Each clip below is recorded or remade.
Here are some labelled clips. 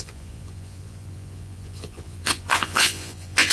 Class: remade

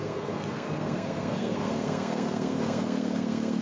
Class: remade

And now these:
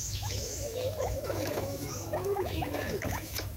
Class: remade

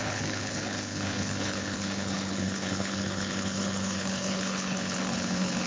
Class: remade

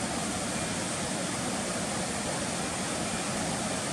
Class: recorded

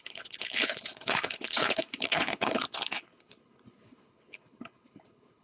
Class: remade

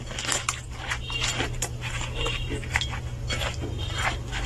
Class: recorded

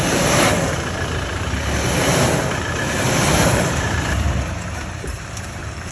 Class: remade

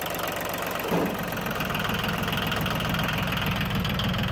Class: recorded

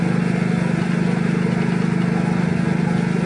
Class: recorded